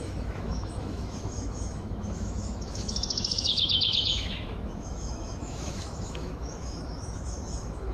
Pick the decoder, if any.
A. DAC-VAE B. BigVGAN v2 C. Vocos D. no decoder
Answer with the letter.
A